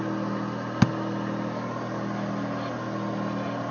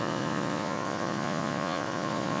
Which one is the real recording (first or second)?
first